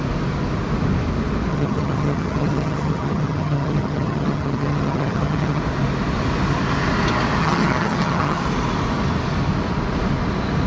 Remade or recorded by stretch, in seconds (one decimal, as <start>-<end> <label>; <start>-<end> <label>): 0.0-1.5 recorded; 1.5-5.6 remade; 5.6-7.4 recorded; 7.4-8.4 remade; 8.4-10.7 recorded